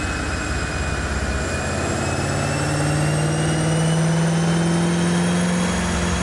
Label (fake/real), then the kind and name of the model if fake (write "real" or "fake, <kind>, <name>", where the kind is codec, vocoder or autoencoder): real